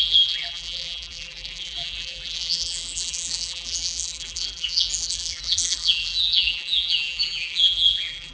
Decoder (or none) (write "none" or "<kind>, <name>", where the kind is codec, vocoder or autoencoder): vocoder, BigVGAN v2